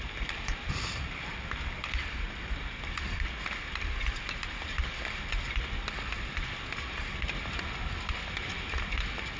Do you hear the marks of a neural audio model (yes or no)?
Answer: no